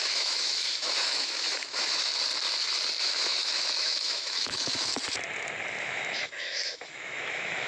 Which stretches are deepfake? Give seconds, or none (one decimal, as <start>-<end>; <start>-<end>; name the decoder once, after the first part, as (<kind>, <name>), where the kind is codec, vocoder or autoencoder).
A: 0.0-2.1 (autoencoder, DAC-VAE); 3.0-4.9; 5.8-7.7

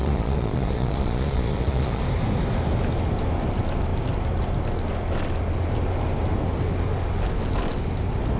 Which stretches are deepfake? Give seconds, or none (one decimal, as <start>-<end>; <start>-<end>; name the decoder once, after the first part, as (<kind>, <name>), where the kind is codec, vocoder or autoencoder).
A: 0.0-2.0 (vocoder, Vocos)

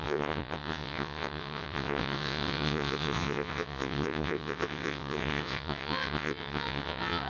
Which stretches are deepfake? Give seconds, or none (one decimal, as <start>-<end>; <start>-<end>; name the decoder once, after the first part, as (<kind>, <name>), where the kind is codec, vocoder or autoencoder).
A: 0.0-7.3 (vocoder, WaveNeXt)

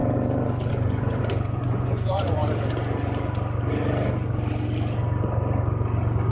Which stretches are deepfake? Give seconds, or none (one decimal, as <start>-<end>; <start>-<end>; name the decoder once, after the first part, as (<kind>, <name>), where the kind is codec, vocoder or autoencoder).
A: 0.7-2.4 (vocoder, Vocos)

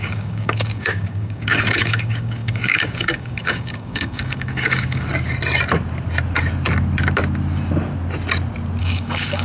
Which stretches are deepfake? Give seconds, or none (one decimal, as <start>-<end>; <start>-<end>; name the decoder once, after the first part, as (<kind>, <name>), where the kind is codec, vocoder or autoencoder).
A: 0.0-5.1 (codec, DAC); 8.8-9.4